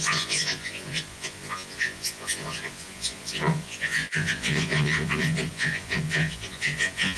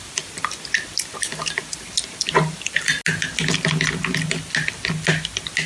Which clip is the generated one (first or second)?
first